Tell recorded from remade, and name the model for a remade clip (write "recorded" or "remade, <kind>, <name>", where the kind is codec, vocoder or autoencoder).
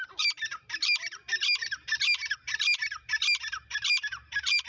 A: remade, vocoder, BigVGAN v2